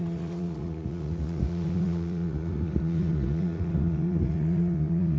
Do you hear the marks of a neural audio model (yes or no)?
yes